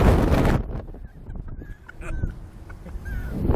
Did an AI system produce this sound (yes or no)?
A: no